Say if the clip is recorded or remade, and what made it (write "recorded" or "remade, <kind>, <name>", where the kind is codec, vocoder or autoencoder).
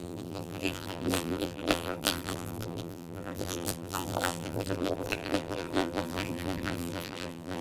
remade, vocoder, BigVGAN v2